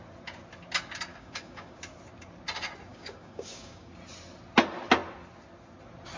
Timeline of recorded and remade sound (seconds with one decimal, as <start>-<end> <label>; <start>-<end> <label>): 0.0-1.1 recorded; 1.1-1.8 remade; 1.8-2.9 recorded; 2.9-3.9 remade; 3.9-6.2 recorded